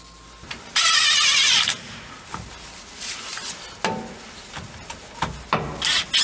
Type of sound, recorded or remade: recorded